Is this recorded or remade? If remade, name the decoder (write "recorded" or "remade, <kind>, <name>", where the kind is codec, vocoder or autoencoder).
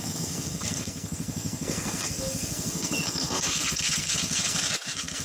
remade, codec, SNAC